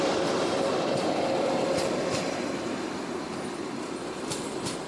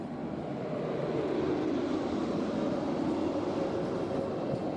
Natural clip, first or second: second